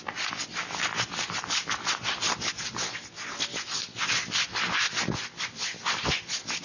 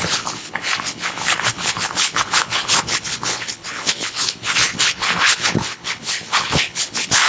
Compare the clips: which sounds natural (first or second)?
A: first